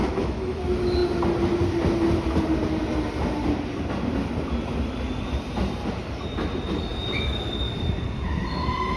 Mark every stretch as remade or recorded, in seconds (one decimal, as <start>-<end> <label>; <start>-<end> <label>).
0.0-0.6 remade; 0.6-9.0 recorded